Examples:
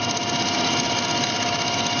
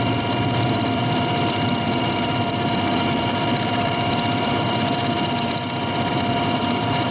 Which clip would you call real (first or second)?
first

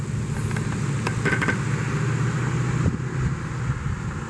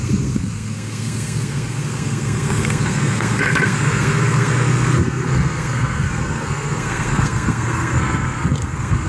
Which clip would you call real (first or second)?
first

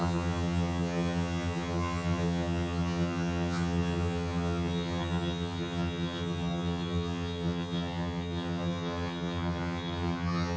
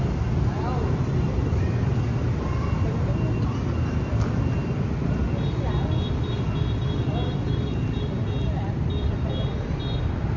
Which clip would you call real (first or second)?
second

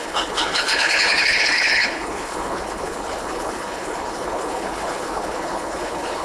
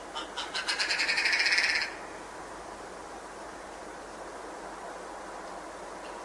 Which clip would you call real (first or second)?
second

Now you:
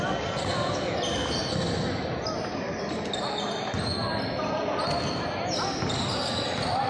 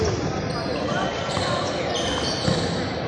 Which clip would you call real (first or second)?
first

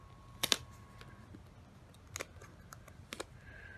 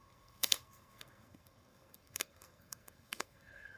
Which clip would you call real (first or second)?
first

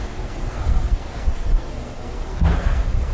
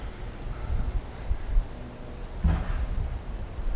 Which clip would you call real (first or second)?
second